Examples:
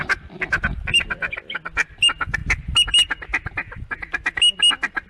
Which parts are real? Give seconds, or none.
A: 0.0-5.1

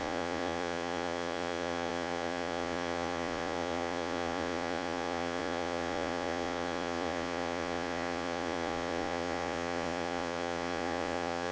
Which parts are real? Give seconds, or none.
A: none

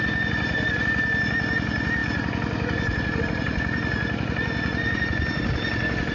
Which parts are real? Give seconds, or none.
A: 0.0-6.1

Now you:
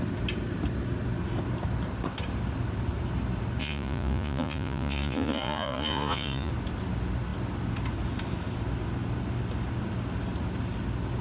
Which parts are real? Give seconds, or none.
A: 0.0-3.6; 6.5-11.2

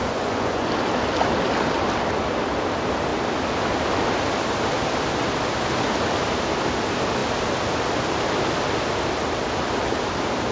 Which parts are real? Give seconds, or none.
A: 0.7-10.5

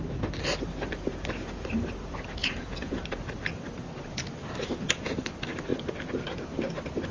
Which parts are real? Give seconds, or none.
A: 0.0-2.4; 3.0-7.1

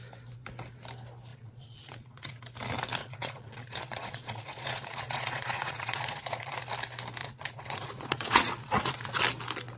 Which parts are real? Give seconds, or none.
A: 0.0-1.3; 2.4-3.0; 6.6-7.2; 9.2-9.8